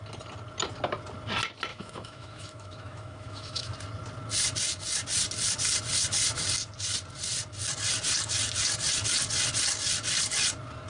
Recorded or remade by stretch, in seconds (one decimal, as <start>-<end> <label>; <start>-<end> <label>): 0.0-1.7 recorded; 1.7-3.7 remade; 3.7-10.9 recorded